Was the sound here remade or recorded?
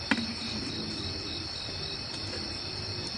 recorded